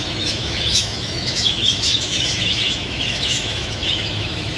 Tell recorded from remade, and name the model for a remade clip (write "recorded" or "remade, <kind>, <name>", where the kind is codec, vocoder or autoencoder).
remade, autoencoder, DAC-VAE